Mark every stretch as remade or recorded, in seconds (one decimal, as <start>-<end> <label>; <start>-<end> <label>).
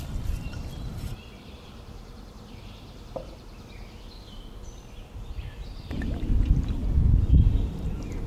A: 0.0-6.8 remade; 6.8-7.3 recorded; 7.3-8.3 remade